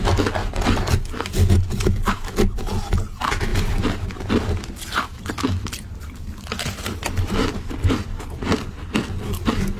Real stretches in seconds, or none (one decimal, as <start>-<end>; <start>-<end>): 0.0-3.5; 7.7-9.8